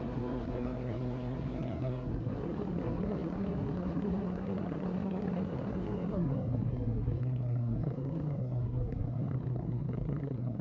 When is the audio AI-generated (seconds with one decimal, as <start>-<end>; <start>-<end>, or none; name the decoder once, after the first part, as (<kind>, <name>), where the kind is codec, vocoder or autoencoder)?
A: 0.0-10.6 (codec, SNAC)

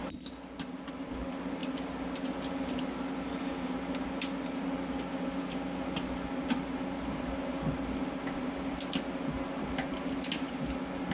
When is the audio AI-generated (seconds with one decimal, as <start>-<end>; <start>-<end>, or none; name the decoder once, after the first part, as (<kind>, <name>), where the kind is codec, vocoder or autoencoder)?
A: none

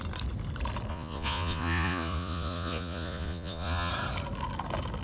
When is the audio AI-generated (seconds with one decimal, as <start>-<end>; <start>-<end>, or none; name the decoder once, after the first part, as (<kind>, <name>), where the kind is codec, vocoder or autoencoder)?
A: 0.9-3.9 (vocoder, Vocos)

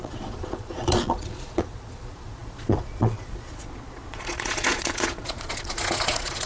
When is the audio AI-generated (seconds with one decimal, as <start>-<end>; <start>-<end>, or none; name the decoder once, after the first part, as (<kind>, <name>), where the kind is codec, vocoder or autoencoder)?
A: 0.0-6.5 (vocoder, Vocos)

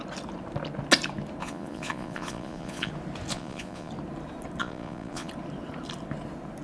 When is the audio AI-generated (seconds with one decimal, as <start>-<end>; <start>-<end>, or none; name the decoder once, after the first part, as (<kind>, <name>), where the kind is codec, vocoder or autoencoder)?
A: 1.4-2.9 (vocoder, Vocos); 3.3-3.9; 4.6-5.3

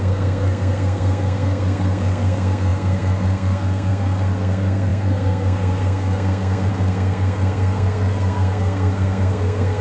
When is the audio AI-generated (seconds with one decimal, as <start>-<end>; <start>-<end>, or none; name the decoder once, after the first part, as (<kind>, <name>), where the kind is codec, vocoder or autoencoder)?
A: 0.0-9.8 (codec, SNAC)